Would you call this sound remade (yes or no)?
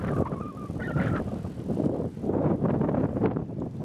no